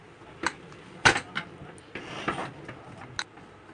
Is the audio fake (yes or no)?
no